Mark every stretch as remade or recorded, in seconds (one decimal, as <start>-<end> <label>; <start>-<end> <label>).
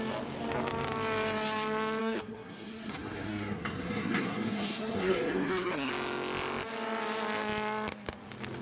0.0-2.0 recorded; 2.0-5.9 remade; 5.9-8.6 recorded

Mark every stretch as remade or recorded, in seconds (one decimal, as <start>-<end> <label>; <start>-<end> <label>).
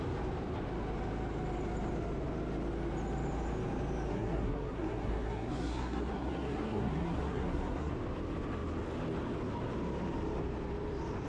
0.0-4.1 recorded; 4.1-7.9 remade; 7.9-11.3 recorded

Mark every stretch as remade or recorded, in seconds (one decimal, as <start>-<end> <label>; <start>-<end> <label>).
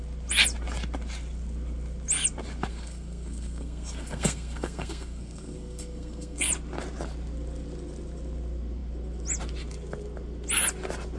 0.0-2.7 recorded; 2.7-6.5 remade; 6.5-11.2 recorded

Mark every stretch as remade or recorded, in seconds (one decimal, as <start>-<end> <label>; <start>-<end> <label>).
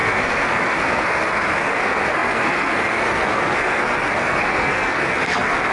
0.0-5.7 remade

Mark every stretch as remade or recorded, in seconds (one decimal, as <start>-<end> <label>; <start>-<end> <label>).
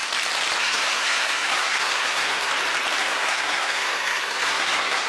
0.0-0.6 recorded; 0.6-2.5 remade; 2.5-3.0 recorded; 3.0-5.1 remade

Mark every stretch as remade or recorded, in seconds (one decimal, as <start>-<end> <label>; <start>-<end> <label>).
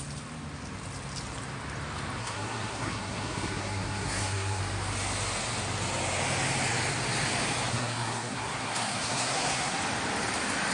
0.0-2.2 recorded; 2.2-4.6 remade; 4.6-7.7 recorded; 7.7-9.8 remade; 9.8-10.7 recorded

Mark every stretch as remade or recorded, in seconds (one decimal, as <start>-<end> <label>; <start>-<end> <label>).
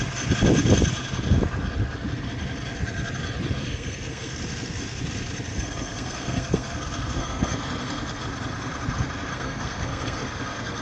0.0-3.6 recorded; 3.6-4.4 remade; 4.4-5.5 recorded; 5.5-8.2 remade; 8.2-9.3 recorded; 9.3-10.8 remade